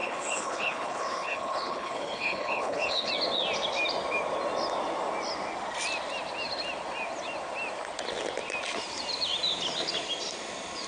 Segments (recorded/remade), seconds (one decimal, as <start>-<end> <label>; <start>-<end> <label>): 0.0-3.1 remade; 3.1-10.9 recorded